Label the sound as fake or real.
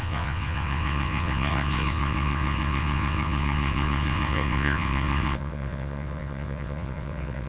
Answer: fake